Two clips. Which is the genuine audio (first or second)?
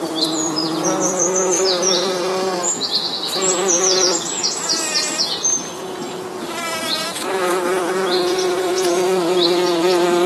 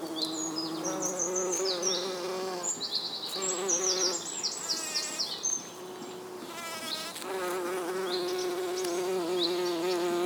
second